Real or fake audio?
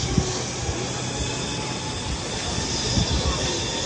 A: real